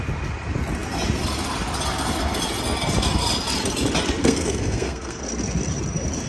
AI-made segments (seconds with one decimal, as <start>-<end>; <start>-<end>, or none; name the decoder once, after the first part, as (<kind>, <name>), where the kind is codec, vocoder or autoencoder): 4.2-5.2 (codec, SNAC)